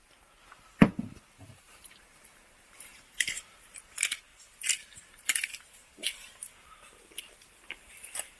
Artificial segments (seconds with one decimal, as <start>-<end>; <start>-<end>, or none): 1.1-8.4